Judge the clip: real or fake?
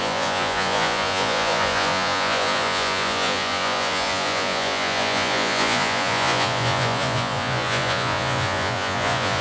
fake